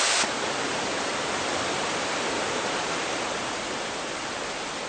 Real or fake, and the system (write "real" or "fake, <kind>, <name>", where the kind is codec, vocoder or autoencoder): fake, vocoder, BigVGAN v2